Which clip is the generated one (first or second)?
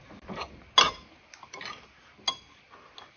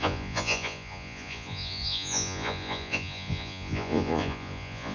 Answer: second